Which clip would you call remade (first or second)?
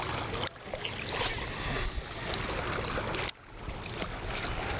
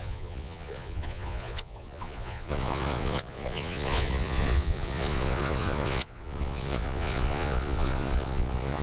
second